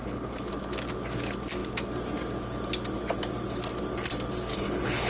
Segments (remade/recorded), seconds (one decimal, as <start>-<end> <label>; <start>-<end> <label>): 0.0-0.5 remade; 0.5-4.5 recorded; 4.5-5.1 remade